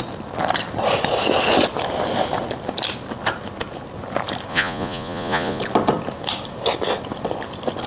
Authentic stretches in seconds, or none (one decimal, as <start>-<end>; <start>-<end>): 0.0-4.5; 5.6-7.9